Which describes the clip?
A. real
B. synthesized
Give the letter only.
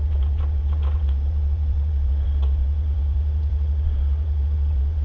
B